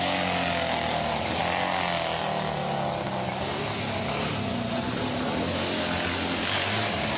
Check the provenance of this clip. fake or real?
real